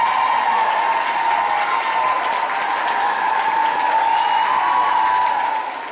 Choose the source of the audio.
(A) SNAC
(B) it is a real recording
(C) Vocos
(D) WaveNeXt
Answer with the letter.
B